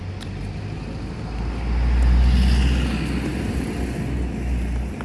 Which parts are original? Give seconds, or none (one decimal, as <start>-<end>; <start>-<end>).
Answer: 0.0-5.0